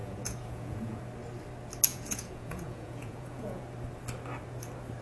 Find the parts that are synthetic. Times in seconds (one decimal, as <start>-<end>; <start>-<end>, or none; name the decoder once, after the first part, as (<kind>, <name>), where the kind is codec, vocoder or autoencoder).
0.0-1.0 (vocoder, Vocos); 1.9-3.6